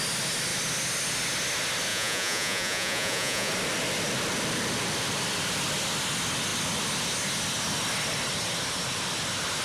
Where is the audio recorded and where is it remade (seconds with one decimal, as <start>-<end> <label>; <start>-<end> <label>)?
0.0-1.9 recorded; 1.9-3.5 remade; 3.5-9.6 recorded

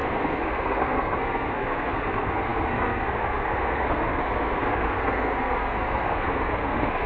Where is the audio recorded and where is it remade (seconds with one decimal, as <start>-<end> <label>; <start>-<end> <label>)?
0.0-7.1 remade

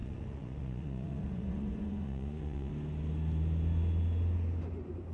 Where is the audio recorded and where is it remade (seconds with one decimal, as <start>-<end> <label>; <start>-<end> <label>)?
0.0-2.7 remade; 2.7-5.1 recorded

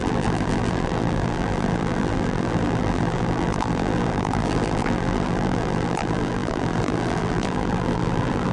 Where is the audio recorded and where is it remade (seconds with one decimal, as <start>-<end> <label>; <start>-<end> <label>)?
0.0-8.5 remade

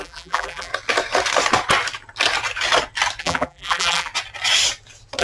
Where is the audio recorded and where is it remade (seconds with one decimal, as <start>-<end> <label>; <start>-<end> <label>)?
0.0-0.7 remade; 0.7-3.2 recorded; 3.2-4.1 remade; 4.1-5.2 recorded